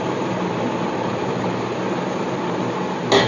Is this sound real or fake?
real